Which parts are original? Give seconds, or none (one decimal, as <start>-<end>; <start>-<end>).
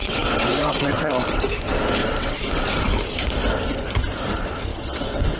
1.1-2.0; 2.7-4.7